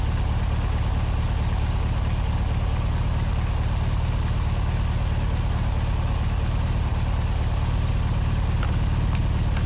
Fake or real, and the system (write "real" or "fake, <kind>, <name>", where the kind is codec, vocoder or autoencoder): real